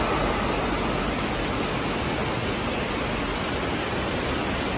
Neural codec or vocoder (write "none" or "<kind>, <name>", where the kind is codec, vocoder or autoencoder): none